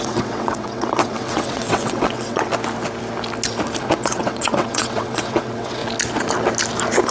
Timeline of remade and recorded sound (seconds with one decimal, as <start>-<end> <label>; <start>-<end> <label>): 0.0-2.5 remade; 2.5-3.8 recorded; 3.8-5.8 remade; 5.8-7.1 recorded